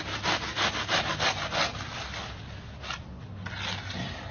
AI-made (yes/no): no